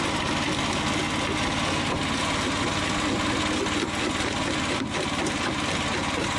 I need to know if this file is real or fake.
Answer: real